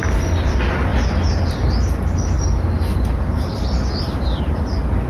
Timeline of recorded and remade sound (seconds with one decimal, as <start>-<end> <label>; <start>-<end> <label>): 0.0-5.1 recorded